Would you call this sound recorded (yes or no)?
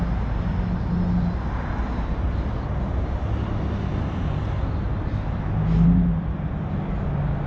yes